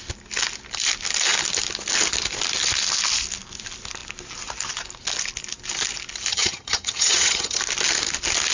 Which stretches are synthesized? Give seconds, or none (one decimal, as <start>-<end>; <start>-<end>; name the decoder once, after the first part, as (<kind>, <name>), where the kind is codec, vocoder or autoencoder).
6.3-7.6 (vocoder, HiFi-GAN)